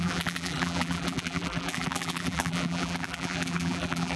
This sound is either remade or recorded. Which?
remade